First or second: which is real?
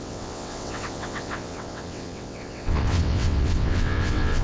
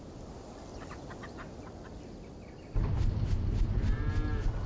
second